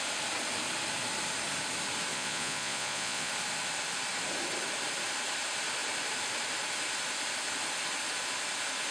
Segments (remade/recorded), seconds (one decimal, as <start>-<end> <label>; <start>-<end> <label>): 0.0-2.1 recorded; 2.1-3.3 remade; 3.3-8.9 recorded